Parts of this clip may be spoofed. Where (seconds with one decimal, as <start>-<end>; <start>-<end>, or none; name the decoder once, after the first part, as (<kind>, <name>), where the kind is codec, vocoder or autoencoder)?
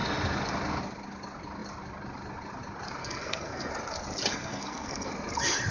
3.0-3.7 (codec, SNAC); 4.3-5.1